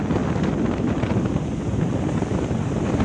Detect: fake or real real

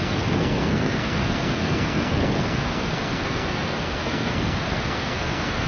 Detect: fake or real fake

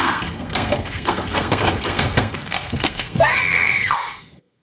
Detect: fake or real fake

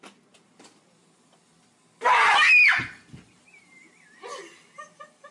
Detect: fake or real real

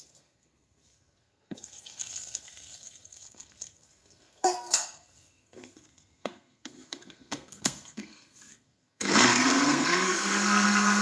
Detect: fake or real fake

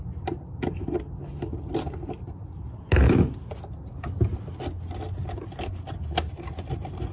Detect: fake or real real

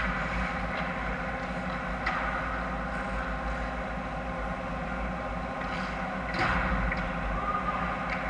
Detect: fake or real real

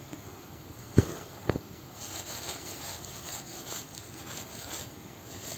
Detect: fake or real fake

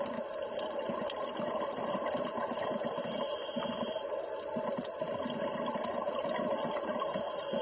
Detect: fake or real real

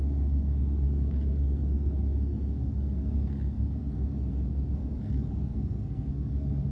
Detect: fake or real fake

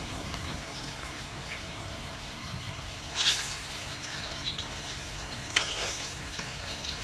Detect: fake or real fake